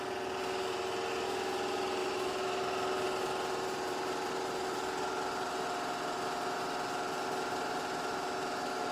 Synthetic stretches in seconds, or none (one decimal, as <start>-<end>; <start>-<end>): 2.0-2.6